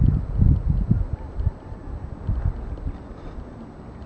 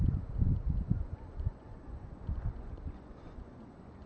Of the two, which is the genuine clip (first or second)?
first